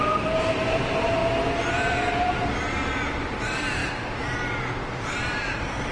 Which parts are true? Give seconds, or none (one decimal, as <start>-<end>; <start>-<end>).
1.2-2.4; 3.8-4.8